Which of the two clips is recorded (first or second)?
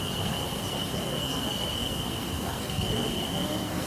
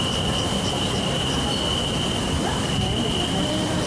second